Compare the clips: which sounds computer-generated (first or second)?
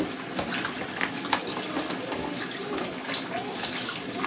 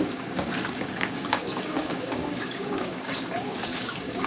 second